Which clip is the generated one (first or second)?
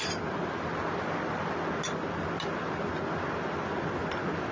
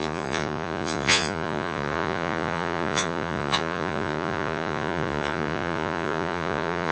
second